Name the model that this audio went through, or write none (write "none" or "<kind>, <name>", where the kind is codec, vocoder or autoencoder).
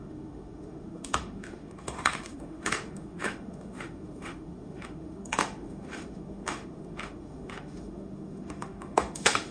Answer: autoencoder, DAC-VAE